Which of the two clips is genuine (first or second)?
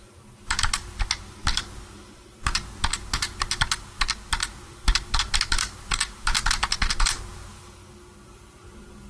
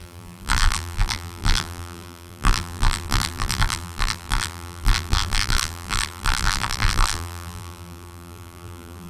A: first